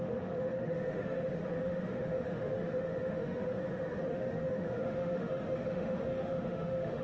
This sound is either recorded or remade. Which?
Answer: remade